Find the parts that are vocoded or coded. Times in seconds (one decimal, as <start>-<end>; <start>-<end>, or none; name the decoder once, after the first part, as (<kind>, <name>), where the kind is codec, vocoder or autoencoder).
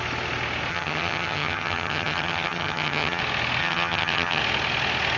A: 0.7-3.2 (vocoder, HiFi-GAN); 3.6-4.4